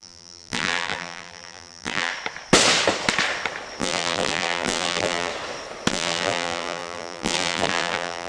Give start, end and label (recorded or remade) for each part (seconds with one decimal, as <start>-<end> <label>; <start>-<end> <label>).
0.0-2.1 remade; 2.1-3.8 recorded; 3.8-5.3 remade; 5.3-5.9 recorded; 5.9-8.3 remade